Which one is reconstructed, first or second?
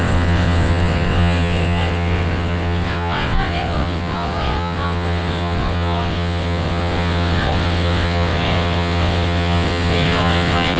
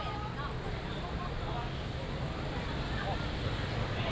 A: first